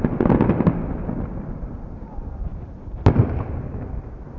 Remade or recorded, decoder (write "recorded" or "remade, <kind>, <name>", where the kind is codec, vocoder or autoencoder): recorded